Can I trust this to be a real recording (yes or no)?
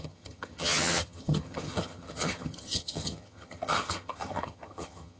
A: no